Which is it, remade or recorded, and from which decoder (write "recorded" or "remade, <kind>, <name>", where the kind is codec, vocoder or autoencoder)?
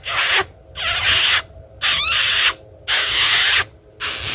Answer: recorded